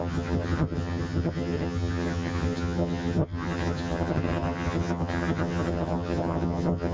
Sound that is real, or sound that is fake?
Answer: fake